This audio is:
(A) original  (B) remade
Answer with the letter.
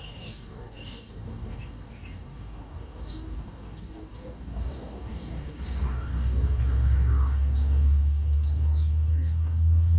B